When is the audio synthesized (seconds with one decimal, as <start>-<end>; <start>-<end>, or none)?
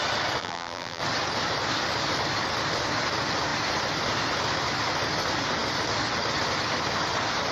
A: 0.4-1.0